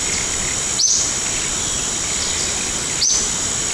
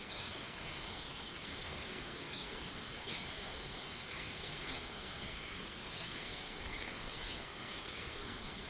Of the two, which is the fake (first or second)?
second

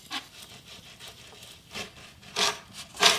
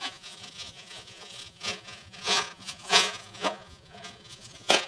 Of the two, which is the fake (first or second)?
second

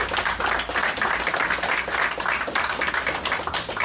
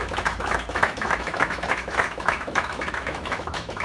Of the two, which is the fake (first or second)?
second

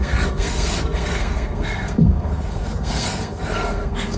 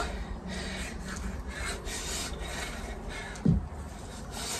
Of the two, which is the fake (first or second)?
first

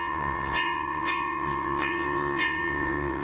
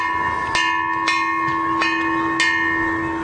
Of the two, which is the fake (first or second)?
first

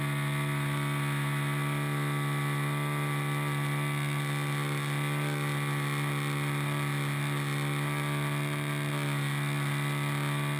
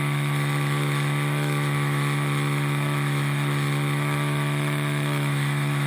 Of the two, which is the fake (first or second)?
second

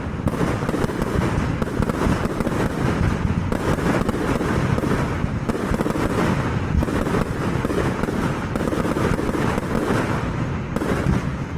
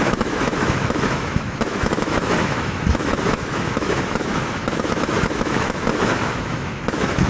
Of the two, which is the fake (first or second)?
second